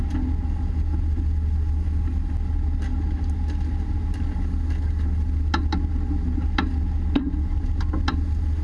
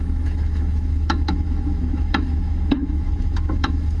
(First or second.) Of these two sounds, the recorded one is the first